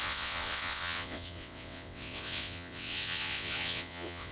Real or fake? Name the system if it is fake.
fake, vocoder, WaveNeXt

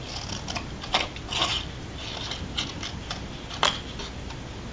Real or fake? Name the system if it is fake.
real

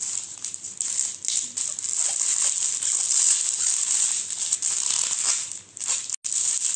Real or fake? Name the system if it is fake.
real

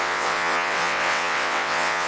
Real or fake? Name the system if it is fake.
fake, vocoder, WaveNeXt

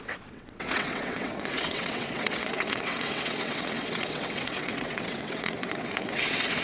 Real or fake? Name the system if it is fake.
fake, vocoder, WaveNeXt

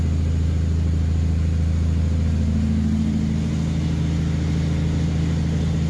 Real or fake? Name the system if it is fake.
real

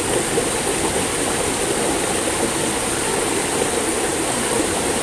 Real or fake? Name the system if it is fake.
real